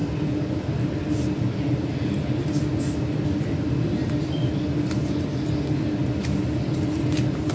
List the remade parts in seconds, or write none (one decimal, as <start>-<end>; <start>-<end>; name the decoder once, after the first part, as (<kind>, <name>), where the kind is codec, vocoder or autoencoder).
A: none